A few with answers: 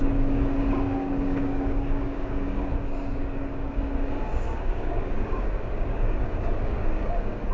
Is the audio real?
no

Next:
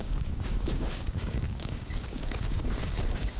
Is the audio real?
no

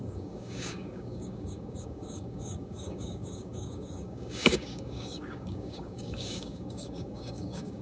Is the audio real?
no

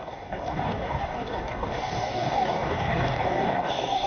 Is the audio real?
no